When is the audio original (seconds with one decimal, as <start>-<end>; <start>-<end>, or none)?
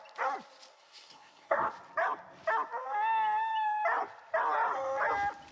0.0-0.7; 1.7-5.5